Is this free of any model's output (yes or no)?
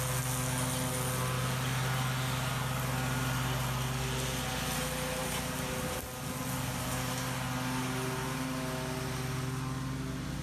yes